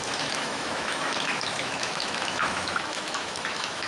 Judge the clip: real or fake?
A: fake